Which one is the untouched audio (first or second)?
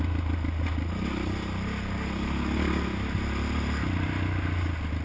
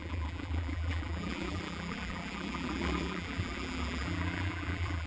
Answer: first